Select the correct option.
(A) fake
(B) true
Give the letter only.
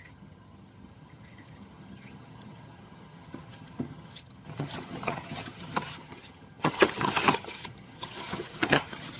A